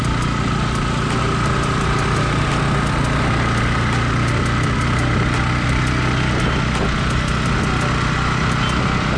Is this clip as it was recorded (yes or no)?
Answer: yes